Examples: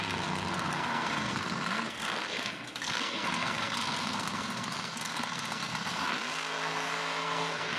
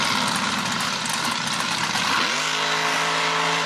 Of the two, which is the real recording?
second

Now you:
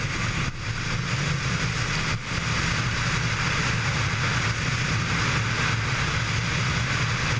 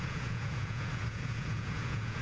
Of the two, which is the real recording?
first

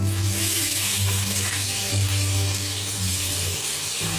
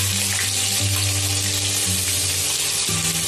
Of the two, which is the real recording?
second